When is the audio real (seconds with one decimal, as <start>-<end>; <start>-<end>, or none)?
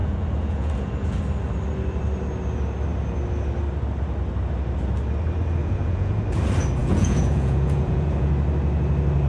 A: 1.2-5.6; 6.2-6.8; 8.3-9.3